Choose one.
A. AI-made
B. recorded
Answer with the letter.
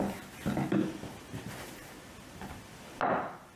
B